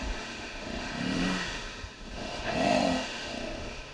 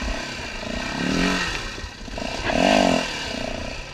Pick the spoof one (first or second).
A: first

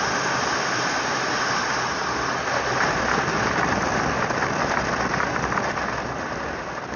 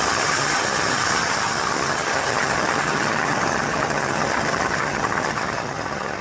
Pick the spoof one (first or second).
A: second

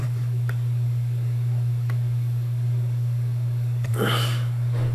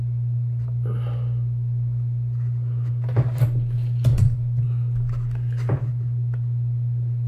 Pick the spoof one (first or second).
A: first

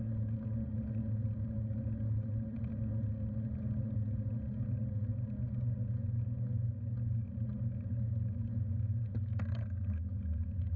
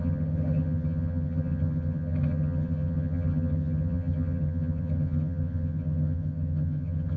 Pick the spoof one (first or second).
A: second